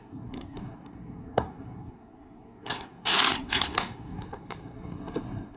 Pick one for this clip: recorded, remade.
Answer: remade